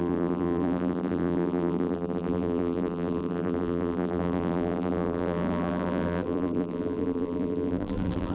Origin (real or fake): fake